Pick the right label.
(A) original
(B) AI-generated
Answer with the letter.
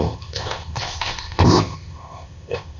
B